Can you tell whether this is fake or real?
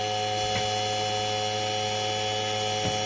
real